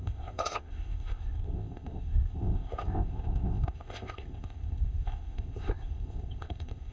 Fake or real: fake